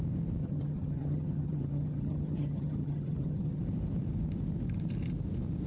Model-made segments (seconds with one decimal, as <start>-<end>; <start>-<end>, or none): 0.4-3.6